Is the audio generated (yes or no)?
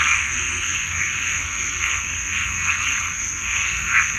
yes